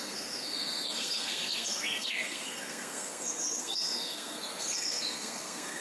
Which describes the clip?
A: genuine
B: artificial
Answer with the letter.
B